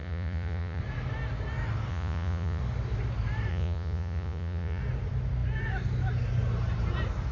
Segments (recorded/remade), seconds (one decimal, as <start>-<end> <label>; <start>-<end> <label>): 0.0-0.8 remade; 0.8-1.9 recorded; 1.9-2.6 remade; 2.6-3.5 recorded; 3.5-4.8 remade; 4.8-7.3 recorded